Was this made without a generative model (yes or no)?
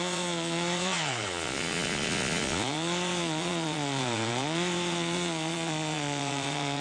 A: no